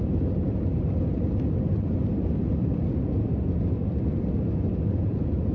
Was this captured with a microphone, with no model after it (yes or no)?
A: yes